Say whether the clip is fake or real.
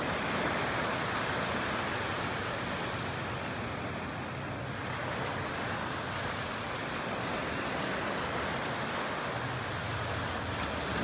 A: real